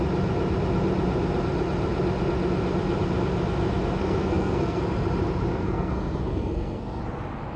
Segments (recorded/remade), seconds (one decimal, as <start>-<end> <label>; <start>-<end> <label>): 0.0-4.0 recorded; 4.0-4.8 remade; 4.8-5.5 recorded; 5.5-7.0 remade; 7.0-7.6 recorded